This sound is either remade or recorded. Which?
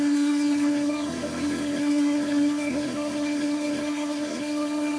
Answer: remade